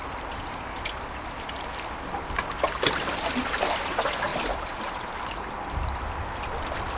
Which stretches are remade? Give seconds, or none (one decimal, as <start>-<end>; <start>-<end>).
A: 4.3-5.5